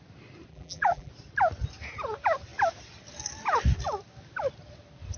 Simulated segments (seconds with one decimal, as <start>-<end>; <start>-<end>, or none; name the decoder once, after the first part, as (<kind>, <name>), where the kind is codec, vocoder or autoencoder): 0.5-1.1 (vocoder, BigVGAN v2)